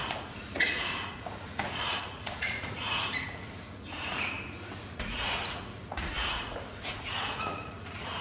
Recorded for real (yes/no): no